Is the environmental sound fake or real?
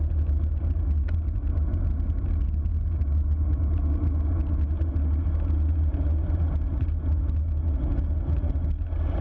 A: real